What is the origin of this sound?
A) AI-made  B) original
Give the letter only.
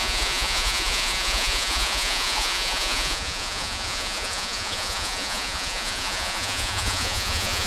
A